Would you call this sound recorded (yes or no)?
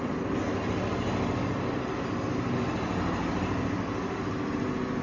yes